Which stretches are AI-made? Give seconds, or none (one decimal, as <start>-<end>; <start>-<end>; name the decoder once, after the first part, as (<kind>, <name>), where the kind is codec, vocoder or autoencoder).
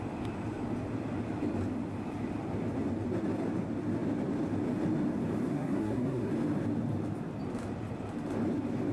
5.5-6.3 (codec, SNAC)